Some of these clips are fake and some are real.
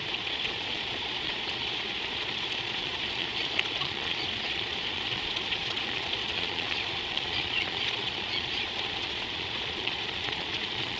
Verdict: fake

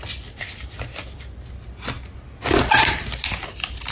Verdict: real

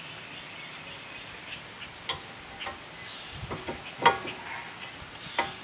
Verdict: real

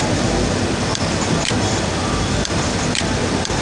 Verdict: fake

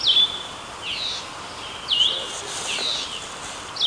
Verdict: real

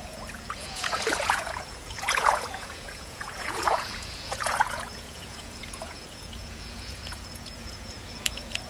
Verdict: fake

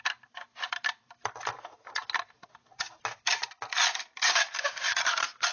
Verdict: real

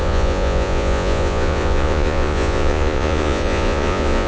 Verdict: fake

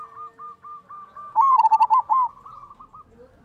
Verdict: real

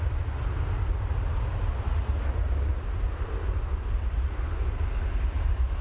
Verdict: real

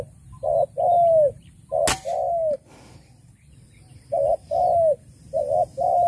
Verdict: real